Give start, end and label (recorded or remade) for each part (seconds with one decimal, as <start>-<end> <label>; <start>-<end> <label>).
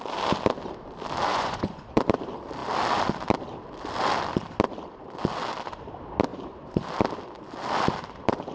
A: 0.0-1.3 recorded; 1.3-2.0 remade; 2.0-6.3 recorded; 6.3-6.8 remade; 6.8-8.5 recorded